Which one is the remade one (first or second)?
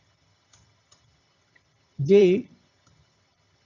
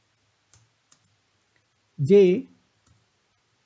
first